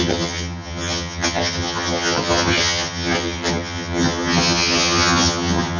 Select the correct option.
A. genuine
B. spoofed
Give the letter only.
B